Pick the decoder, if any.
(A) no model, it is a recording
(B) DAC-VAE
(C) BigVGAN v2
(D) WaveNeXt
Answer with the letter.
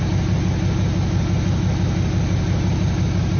A